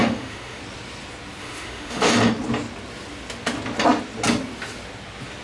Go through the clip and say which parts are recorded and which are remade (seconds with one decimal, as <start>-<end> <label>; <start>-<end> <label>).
0.0-0.6 remade; 0.6-1.4 recorded; 1.4-2.1 remade; 2.1-5.4 recorded

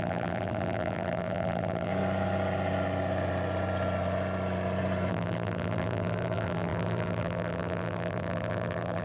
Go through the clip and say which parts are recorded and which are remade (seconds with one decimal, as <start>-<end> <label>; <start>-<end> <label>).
0.0-1.9 remade; 1.9-5.1 recorded; 5.1-9.0 remade